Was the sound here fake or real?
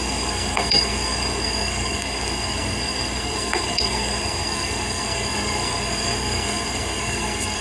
fake